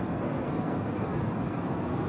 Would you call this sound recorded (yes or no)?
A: no